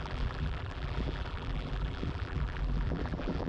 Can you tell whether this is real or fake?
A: fake